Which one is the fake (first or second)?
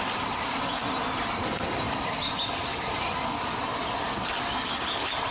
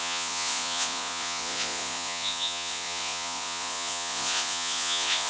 second